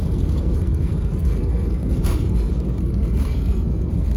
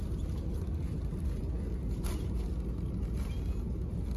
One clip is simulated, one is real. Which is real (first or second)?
second